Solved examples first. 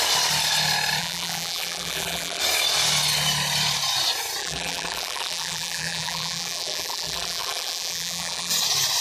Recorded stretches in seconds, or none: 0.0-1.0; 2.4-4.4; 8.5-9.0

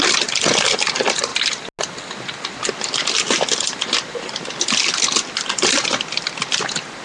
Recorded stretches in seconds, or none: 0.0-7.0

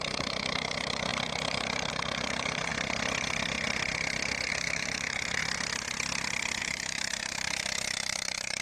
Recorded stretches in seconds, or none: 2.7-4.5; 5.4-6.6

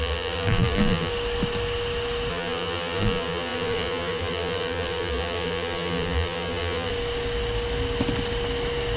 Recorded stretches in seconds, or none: 1.1-2.3; 6.9-9.0